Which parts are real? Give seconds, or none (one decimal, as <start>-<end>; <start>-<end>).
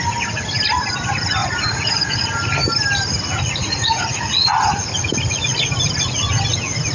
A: 0.0-1.4; 2.3-3.6; 4.8-6.9